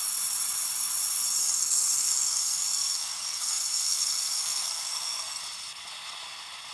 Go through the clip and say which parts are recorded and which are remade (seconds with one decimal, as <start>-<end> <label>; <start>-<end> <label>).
0.0-1.4 recorded; 1.4-5.4 remade; 5.4-6.7 recorded